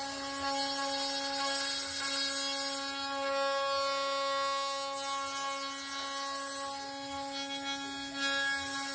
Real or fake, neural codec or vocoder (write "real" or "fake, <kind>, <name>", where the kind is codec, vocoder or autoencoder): real